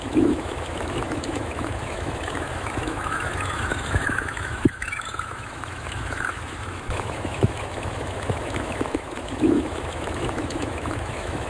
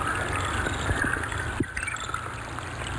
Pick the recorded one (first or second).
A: second